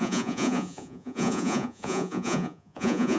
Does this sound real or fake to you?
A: fake